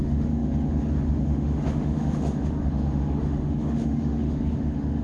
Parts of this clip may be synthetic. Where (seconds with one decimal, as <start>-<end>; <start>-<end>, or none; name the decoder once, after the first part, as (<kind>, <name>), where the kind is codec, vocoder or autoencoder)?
0.0-5.0 (autoencoder, DAC-VAE)